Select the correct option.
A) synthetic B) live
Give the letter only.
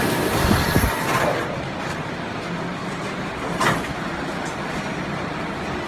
B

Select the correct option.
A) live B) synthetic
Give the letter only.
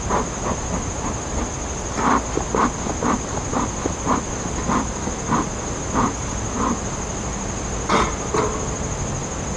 A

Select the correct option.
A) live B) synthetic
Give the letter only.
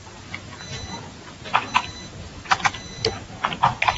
A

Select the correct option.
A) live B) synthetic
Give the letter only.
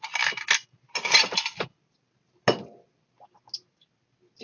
A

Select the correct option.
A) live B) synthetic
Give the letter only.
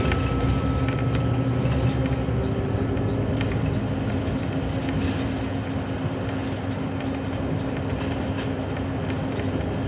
A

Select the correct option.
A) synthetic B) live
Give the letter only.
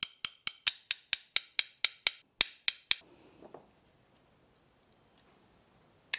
B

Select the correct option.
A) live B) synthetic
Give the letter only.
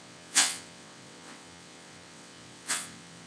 B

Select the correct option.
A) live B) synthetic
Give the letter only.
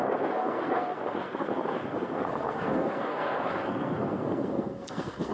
B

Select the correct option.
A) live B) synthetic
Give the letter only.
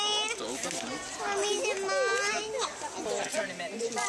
A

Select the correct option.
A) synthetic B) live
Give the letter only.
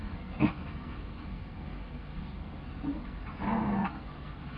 A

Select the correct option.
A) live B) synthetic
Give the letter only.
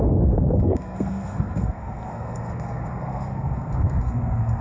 B